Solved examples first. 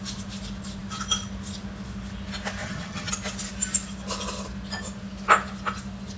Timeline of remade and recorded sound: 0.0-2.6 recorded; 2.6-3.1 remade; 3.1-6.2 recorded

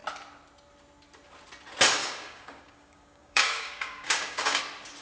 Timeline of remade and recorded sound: 0.0-2.0 recorded; 2.0-4.6 remade; 4.6-5.0 recorded

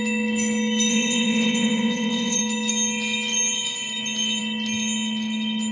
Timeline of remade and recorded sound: 0.0-0.9 recorded; 0.9-2.4 remade; 2.4-5.7 recorded

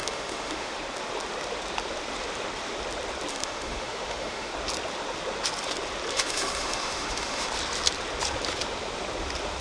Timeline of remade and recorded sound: 0.0-0.7 remade; 0.7-3.3 recorded; 3.3-4.5 remade; 4.5-6.1 recorded; 6.1-7.5 remade; 7.5-9.6 recorded

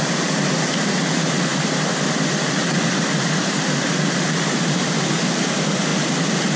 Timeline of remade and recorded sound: 0.0-5.9 remade; 5.9-6.6 recorded

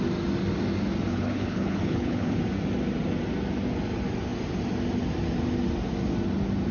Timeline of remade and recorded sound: 0.0-1.1 recorded; 1.1-2.4 remade; 2.4-6.7 recorded

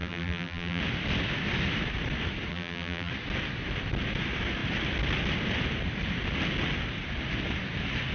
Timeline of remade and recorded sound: 0.0-0.8 remade; 0.8-2.5 recorded; 2.5-3.1 remade; 3.1-8.1 recorded